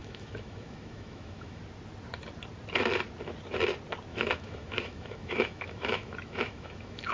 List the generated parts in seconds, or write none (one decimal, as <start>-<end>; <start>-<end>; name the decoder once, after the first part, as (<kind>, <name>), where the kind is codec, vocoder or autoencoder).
0.0-1.6 (autoencoder, DAC-VAE); 4.1-7.1